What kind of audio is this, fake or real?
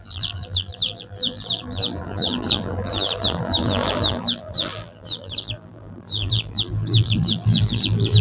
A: fake